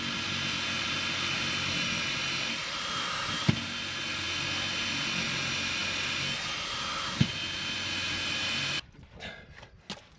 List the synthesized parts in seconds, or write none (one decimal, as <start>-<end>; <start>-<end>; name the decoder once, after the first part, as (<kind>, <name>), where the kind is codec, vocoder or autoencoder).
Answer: none